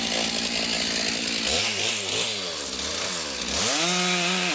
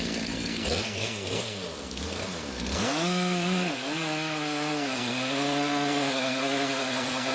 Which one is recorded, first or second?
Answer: first